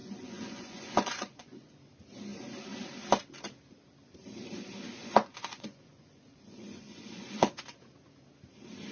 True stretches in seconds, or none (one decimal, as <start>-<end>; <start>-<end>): 1.8-5.0; 7.6-8.9